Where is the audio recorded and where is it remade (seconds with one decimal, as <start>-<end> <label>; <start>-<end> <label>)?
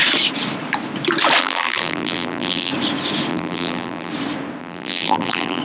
0.0-1.4 recorded; 1.4-2.7 remade; 2.7-3.3 recorded; 3.3-4.1 remade; 4.1-4.6 recorded; 4.6-5.6 remade